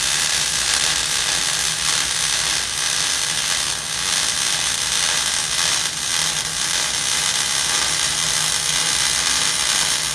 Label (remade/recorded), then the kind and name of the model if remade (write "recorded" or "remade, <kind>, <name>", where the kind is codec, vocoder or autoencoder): recorded